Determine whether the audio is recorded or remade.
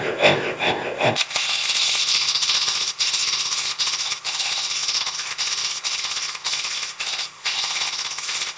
remade